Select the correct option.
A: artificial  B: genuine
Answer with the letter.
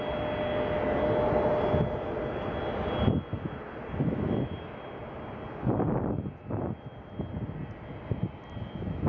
B